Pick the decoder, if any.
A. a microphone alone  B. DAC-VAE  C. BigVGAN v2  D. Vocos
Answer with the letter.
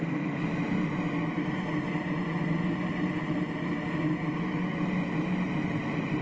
A